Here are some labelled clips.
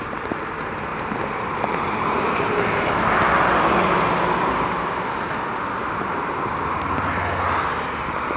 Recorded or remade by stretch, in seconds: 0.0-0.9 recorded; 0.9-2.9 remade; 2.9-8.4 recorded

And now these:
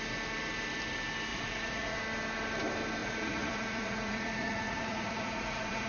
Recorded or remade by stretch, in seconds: 0.0-1.3 recorded; 1.3-2.0 remade; 2.0-3.0 recorded; 3.0-5.9 remade